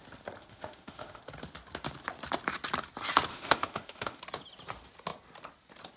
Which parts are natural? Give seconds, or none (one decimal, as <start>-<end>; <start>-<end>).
0.0-0.4; 1.2-3.3; 4.2-6.0